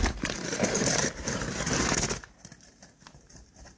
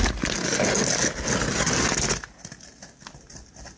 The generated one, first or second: first